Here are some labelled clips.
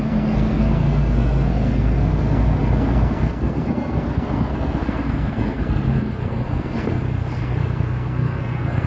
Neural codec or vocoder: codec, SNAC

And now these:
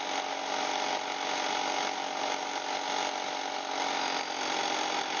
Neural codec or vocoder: none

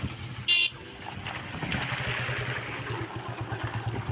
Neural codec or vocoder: none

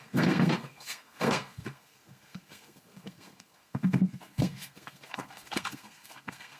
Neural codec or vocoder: codec, SNAC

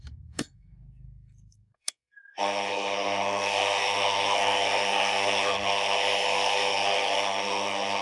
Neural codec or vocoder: codec, SNAC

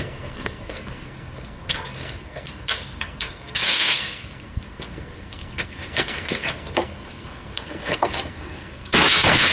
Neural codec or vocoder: codec, SNAC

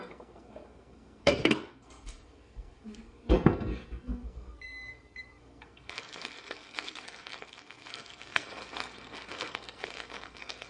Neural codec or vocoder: codec, SNAC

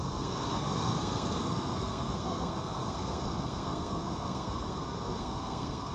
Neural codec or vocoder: codec, SNAC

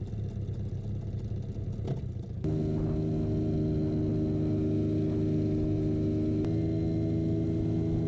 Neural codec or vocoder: none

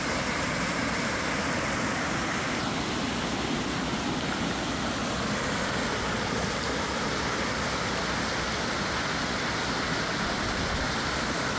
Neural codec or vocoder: none